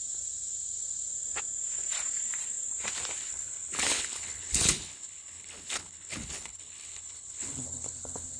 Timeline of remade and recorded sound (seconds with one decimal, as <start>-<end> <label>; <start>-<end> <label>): 0.0-3.2 recorded; 3.2-8.4 remade